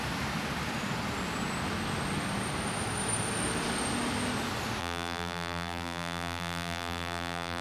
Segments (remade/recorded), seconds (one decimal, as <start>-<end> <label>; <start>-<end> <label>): 0.0-4.8 recorded; 4.8-7.6 remade